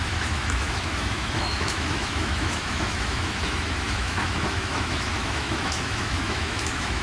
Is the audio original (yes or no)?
no